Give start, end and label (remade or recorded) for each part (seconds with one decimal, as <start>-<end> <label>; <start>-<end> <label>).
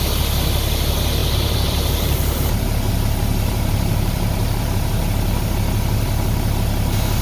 0.0-1.2 recorded; 1.2-5.5 remade; 5.5-7.2 recorded